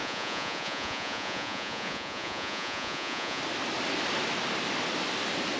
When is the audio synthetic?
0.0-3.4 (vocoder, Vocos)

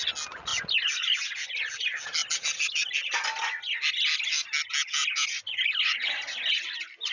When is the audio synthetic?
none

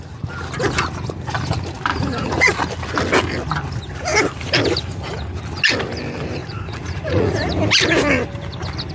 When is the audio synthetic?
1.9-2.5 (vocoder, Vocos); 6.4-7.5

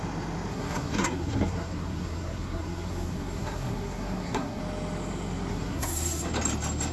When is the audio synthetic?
0.5-4.6 (codec, SNAC); 5.5-6.3